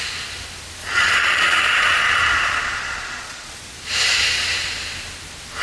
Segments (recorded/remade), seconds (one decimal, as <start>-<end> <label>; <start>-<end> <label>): 0.0-0.8 recorded; 0.8-3.6 remade; 3.6-5.6 recorded